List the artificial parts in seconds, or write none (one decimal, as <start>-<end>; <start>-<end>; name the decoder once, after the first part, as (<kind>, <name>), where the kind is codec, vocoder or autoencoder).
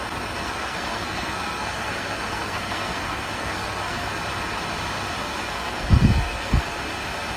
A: 0.4-4.2 (codec, SNAC); 5.2-6.8